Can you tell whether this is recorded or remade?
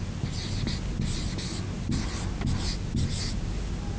recorded